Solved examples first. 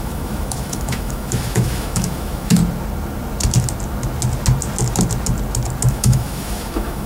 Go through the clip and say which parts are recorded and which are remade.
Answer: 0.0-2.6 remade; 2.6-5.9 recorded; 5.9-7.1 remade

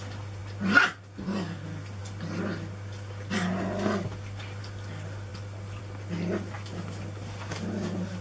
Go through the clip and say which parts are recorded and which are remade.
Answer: 0.0-8.2 recorded

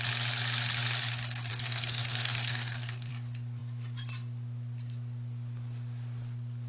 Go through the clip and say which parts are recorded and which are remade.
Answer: 0.0-1.5 recorded; 1.5-3.1 remade; 3.1-6.7 recorded

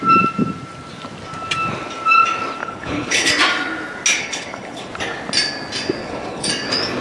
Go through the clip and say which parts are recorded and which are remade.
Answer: 0.0-2.6 recorded; 2.6-3.3 remade; 3.3-4.2 recorded; 4.2-4.9 remade; 4.9-6.0 recorded; 6.0-6.5 remade; 6.5-7.0 recorded

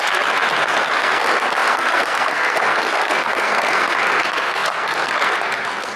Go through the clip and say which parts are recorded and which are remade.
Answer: 0.0-6.0 remade